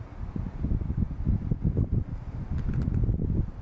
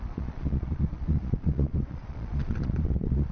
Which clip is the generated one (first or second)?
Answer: second